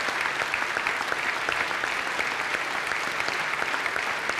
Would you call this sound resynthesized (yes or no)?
no